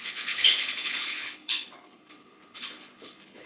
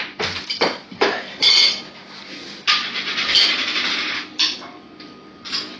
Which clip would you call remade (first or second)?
first